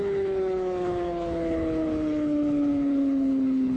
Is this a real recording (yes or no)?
no